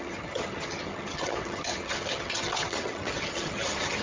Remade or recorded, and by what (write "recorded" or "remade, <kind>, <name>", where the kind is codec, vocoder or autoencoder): remade, vocoder, HiFi-GAN